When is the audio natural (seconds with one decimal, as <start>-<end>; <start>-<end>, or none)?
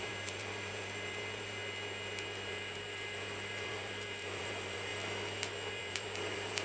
1.6-2.5; 4.9-5.7